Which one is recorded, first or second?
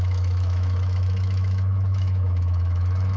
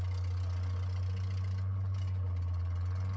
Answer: second